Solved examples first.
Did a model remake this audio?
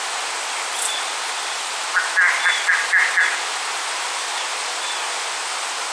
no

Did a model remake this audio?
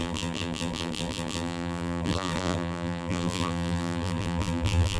yes